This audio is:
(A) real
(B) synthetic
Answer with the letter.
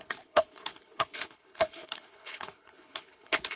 B